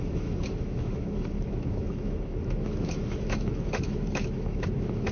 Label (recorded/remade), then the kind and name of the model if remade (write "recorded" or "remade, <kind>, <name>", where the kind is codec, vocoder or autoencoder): remade, autoencoder, DAC-VAE